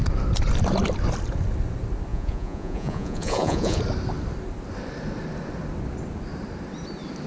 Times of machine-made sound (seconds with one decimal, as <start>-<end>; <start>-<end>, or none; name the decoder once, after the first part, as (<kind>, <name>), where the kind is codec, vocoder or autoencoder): 2.1-3.8 (vocoder, Vocos)